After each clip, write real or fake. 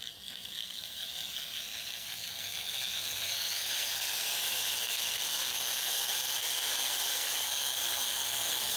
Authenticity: fake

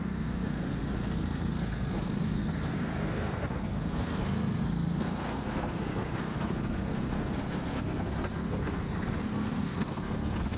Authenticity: fake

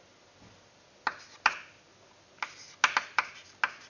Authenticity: real